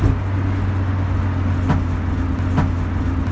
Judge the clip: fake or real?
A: real